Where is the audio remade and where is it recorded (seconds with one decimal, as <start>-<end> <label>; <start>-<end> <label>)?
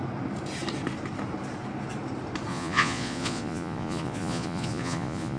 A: 0.0-2.5 recorded; 2.5-5.4 remade